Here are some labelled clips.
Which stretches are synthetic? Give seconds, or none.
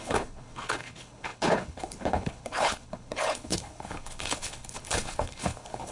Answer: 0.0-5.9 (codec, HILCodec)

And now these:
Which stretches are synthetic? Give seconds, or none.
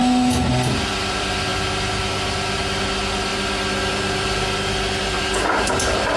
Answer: 0.5-6.2 (vocoder, BigVGAN v2)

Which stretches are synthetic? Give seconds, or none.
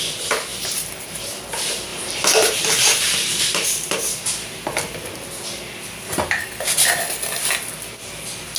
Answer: 0.5-1.2 (vocoder, BigVGAN v2); 1.9-4.3